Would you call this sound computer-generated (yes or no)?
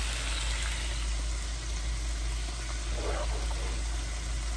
no